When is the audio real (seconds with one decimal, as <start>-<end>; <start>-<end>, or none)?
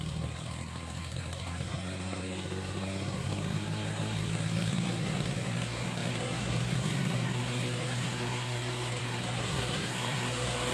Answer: none